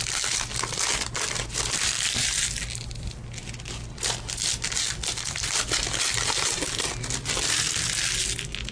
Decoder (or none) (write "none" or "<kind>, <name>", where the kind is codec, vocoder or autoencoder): none